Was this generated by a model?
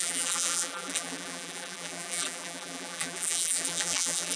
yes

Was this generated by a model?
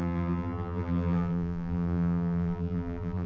yes